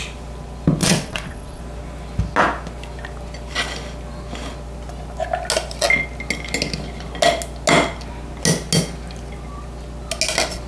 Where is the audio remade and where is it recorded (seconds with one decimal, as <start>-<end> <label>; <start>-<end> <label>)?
0.0-0.8 recorded; 0.8-1.6 remade; 1.6-10.7 recorded